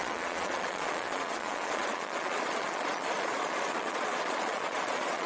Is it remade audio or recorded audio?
remade